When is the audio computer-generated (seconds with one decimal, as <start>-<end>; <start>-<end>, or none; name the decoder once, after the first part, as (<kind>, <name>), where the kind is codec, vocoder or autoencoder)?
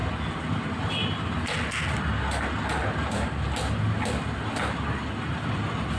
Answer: none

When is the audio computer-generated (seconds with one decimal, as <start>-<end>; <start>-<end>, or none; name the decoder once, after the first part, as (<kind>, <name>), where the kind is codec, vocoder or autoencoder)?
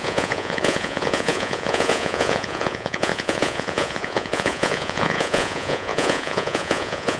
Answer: 0.0-7.2 (vocoder, Vocos)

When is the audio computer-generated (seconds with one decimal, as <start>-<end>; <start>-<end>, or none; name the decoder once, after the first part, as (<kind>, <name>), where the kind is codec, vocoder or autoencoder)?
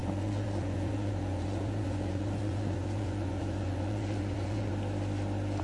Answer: 0.0-4.7 (vocoder, Vocos)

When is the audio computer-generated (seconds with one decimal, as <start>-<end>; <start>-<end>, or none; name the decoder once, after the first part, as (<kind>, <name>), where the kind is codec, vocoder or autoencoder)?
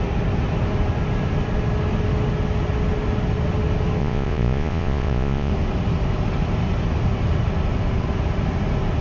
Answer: 4.0-5.5 (vocoder, Vocos)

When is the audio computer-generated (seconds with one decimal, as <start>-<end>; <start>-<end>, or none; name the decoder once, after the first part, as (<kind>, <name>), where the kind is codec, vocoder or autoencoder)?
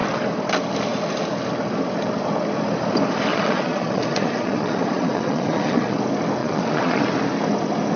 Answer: 3.3-6.0 (vocoder, Vocos); 6.4-7.1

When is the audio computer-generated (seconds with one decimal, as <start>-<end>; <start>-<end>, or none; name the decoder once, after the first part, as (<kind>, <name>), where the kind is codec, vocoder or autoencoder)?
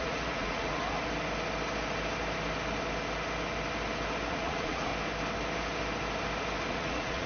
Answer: 0.0-0.8 (vocoder, Vocos); 4.3-4.9; 6.7-7.3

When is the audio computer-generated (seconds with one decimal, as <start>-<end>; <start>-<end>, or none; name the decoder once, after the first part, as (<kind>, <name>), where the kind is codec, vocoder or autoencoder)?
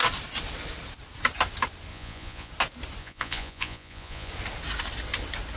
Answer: 1.9-2.5 (vocoder, Vocos); 3.0-4.3